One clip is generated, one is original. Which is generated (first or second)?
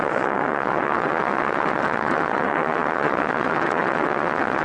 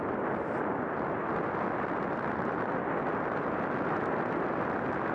first